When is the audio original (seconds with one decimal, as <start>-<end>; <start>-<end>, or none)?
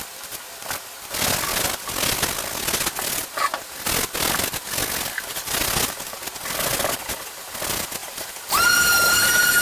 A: 0.0-9.6